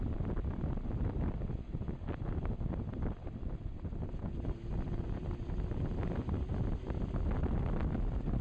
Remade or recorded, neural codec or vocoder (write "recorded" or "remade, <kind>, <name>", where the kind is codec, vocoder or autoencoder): remade, vocoder, BigVGAN v2